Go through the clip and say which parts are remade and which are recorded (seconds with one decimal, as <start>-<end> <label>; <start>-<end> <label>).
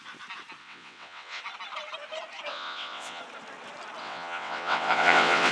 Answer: 0.0-0.6 recorded; 0.6-1.4 remade; 1.4-2.5 recorded; 2.5-3.2 remade; 3.2-4.0 recorded; 4.0-5.5 remade